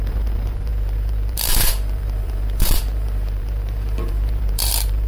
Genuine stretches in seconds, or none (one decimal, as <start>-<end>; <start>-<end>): none